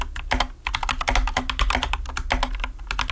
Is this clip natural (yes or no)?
yes